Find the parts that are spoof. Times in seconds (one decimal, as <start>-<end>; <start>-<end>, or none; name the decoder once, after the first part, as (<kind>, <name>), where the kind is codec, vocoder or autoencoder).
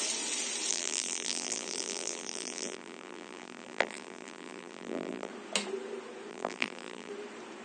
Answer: 0.7-5.3 (vocoder, BigVGAN v2); 6.3-7.1